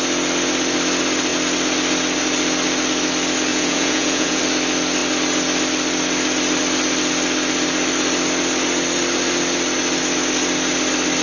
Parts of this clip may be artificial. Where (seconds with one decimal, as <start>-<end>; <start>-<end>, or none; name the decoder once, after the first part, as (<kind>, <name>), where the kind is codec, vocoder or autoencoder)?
3.5-4.4 (vocoder, Vocos)